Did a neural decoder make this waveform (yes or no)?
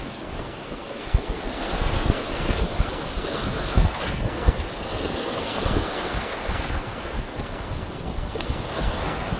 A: yes